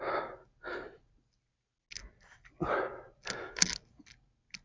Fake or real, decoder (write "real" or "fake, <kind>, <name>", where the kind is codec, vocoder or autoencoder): real